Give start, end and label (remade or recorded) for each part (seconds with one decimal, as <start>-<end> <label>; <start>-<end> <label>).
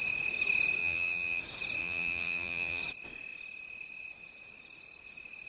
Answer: 0.0-0.8 recorded; 0.8-1.4 remade; 1.4-1.8 recorded; 1.8-2.8 remade; 2.8-5.5 recorded